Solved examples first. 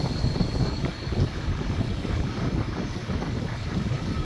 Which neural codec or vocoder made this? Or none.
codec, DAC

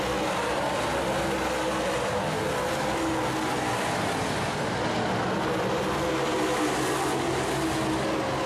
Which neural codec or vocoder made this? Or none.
none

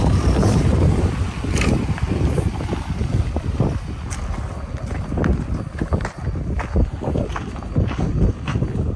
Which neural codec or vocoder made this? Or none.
none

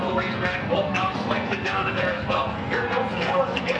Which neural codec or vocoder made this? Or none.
codec, SNAC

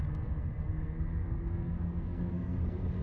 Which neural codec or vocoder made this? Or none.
codec, SNAC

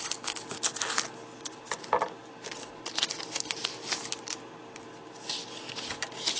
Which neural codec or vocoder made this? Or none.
none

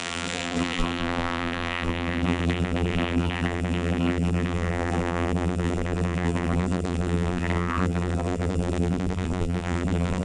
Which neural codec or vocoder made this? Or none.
vocoder, BigVGAN v2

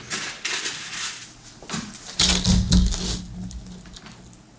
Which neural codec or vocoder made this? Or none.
none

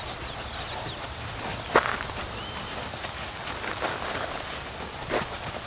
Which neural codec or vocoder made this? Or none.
vocoder, BigVGAN v2